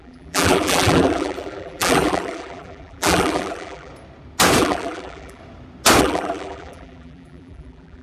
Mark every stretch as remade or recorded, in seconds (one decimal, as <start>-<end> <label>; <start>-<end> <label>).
0.0-3.9 remade; 3.9-4.6 recorded; 4.6-5.4 remade; 5.4-6.0 recorded; 6.0-8.0 remade